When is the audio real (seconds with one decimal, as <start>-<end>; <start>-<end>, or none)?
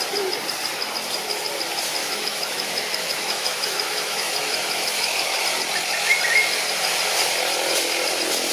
0.0-2.0; 5.4-8.5